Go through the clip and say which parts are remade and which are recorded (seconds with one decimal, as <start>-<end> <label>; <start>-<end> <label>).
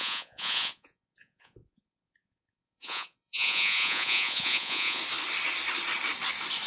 0.0-5.0 remade; 5.0-6.7 recorded